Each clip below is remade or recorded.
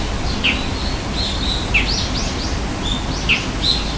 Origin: recorded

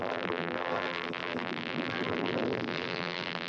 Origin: remade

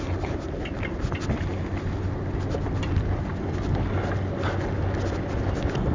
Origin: recorded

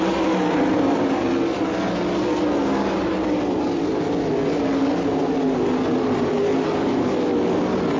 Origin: recorded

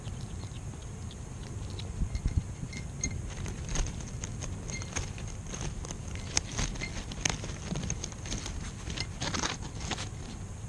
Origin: remade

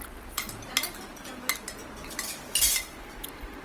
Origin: recorded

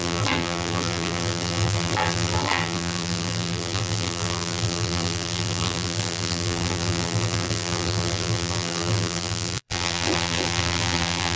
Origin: remade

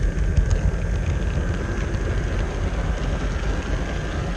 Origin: recorded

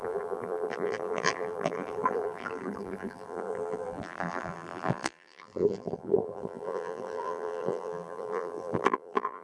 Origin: remade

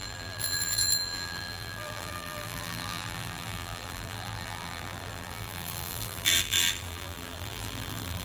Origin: remade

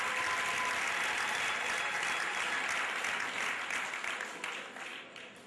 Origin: recorded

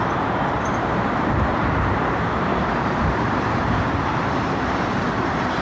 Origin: remade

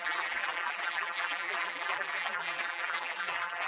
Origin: remade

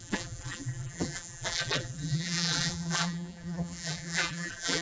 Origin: remade